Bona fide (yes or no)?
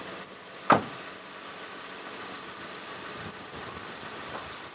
yes